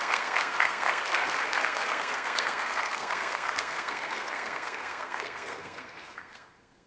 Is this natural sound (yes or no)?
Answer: no